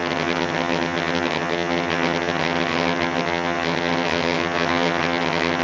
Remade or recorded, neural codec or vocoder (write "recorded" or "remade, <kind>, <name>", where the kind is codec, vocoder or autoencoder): remade, vocoder, HiFi-GAN